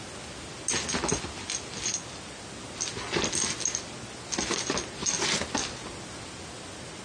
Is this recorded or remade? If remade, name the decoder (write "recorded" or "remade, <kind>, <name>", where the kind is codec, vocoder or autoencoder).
recorded